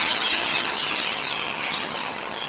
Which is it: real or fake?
fake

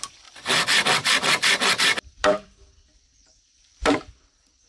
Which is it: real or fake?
fake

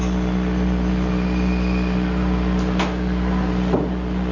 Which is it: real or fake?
real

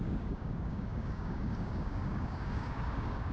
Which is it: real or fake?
fake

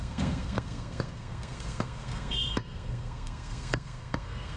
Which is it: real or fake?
fake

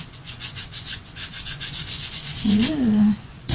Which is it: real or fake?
fake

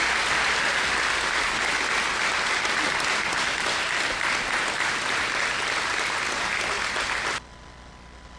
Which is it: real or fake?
real